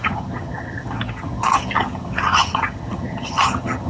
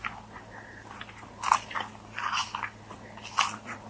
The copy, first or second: first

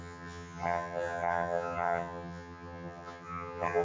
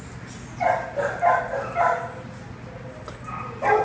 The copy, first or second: first